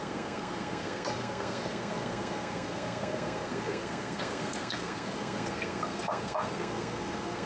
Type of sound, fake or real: fake